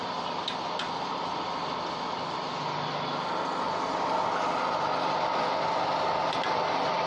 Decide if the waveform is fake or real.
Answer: real